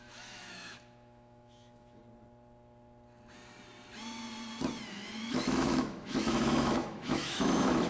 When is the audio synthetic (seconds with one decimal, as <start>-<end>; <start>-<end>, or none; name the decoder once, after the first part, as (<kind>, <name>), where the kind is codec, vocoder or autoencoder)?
0.0-2.0 (autoencoder, DAC-VAE); 4.9-7.9